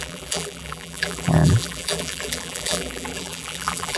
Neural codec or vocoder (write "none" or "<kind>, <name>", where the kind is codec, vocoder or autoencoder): vocoder, BigVGAN v2